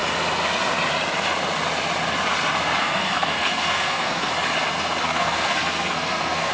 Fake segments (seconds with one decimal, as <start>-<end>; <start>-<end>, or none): 2.8-4.3; 5.0-6.5